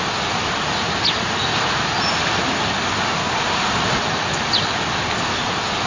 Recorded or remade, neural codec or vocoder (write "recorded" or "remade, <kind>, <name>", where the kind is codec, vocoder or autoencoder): recorded